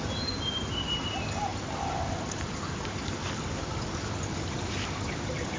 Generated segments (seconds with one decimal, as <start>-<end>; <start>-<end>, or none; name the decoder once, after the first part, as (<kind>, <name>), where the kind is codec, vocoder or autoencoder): none